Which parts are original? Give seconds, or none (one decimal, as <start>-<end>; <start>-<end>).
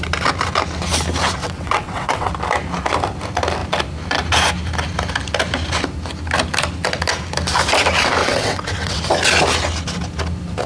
0.0-1.4; 2.3-8.2; 9.0-10.7